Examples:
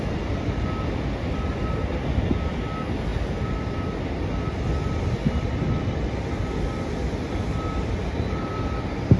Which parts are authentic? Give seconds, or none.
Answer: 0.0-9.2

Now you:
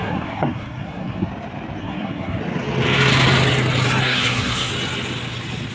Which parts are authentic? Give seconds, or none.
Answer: 1.3-1.8; 2.4-4.0; 4.7-5.7

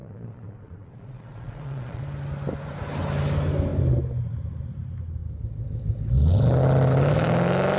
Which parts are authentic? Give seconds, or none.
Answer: 2.0-7.8